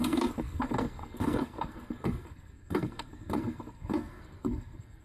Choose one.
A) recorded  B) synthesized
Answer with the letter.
B